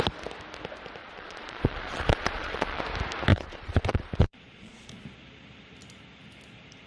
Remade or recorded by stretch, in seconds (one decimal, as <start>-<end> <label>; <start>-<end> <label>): 0.0-1.0 recorded; 1.0-2.8 remade; 2.8-3.3 recorded; 3.3-4.9 remade; 4.9-6.9 recorded